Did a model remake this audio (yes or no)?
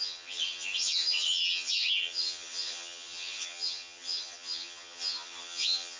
yes